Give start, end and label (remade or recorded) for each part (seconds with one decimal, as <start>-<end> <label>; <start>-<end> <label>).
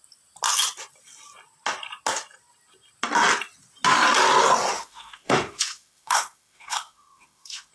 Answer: 0.0-4.7 recorded; 4.7-7.7 remade